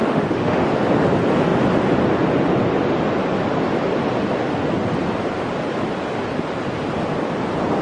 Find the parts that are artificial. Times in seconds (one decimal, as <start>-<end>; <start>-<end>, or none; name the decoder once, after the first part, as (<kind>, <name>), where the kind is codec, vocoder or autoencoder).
0.0-0.7 (autoencoder, DAC-VAE)